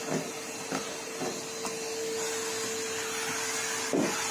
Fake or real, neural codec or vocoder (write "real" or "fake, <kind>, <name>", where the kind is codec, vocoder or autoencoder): real